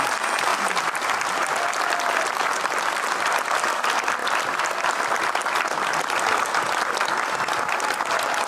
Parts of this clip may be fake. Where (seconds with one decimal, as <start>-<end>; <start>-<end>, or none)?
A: 0.5-1.3